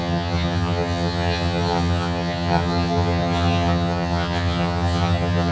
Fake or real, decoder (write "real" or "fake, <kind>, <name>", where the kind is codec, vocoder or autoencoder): fake, vocoder, HiFi-GAN